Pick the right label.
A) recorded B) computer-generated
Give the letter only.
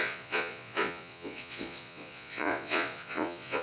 B